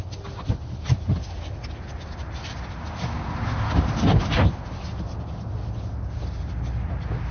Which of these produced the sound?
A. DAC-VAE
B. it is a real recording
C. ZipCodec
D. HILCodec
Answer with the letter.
B